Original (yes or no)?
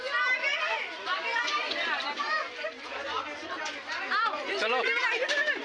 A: yes